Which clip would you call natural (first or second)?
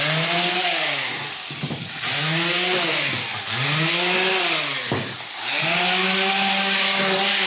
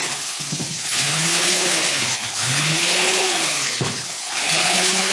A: first